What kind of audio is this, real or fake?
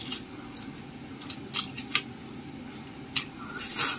real